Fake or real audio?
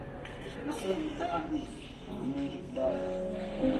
fake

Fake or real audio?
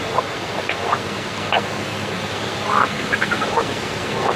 fake